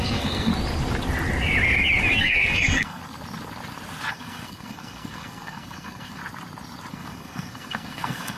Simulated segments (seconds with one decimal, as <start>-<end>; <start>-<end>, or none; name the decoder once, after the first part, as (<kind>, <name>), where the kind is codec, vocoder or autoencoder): 0.0-0.5 (codec, SNAC); 2.1-3.0; 4.1-6.2; 6.9-8.4